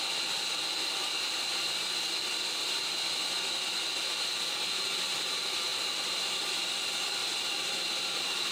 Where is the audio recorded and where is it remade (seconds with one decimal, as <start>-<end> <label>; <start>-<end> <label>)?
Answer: 0.0-1.0 remade; 1.0-1.5 recorded; 1.5-2.6 remade; 2.6-4.3 recorded; 4.3-5.7 remade; 5.7-6.3 recorded; 6.3-7.2 remade; 7.2-8.5 recorded